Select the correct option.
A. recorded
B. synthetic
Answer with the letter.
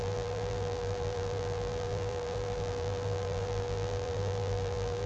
B